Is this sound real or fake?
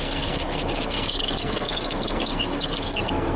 fake